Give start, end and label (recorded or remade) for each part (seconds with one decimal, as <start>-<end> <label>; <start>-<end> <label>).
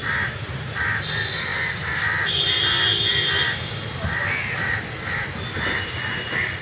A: 0.0-6.6 recorded